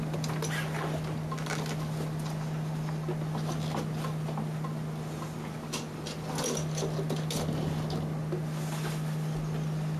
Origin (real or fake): real